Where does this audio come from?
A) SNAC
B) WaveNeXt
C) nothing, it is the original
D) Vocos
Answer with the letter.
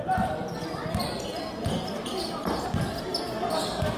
C